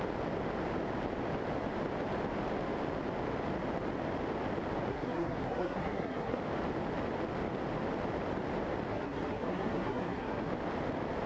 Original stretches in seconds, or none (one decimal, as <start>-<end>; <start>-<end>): 0.0-4.9; 6.4-8.9; 10.5-11.3